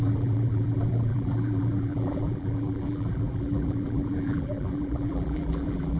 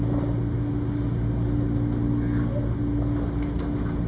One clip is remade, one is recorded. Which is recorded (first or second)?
second